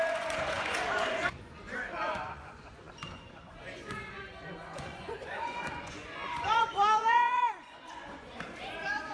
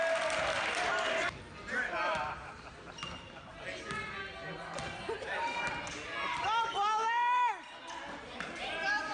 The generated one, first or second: first